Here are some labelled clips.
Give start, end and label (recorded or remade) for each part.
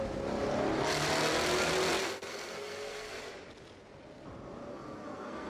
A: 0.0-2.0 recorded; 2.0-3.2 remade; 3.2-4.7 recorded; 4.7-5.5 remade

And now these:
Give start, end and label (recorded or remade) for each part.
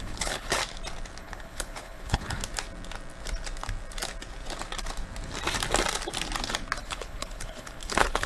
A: 0.0-0.6 remade; 0.6-1.2 recorded; 1.2-2.4 remade; 2.4-6.8 recorded; 6.8-8.3 remade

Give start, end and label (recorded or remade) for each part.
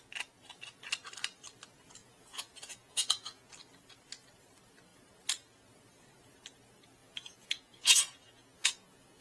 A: 0.0-2.0 recorded; 2.0-3.5 remade; 3.5-7.0 recorded; 7.0-9.2 remade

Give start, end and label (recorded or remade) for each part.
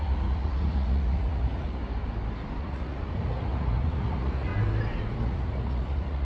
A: 0.0-1.8 remade; 1.8-2.6 recorded; 2.6-4.5 remade; 4.5-5.2 recorded; 5.2-6.2 remade